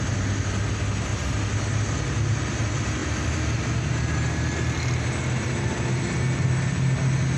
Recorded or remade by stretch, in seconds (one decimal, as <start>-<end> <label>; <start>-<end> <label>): 0.0-7.4 recorded